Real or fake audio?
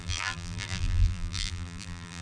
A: fake